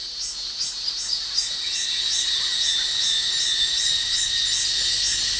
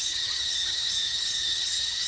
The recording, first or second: first